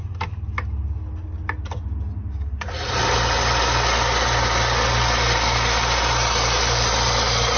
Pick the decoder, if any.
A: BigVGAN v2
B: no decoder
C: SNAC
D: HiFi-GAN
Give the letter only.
B